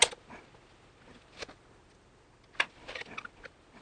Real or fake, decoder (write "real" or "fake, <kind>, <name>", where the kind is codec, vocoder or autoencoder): real